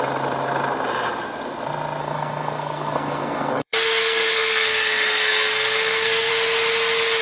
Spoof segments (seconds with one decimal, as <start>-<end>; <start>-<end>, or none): 2.0-6.3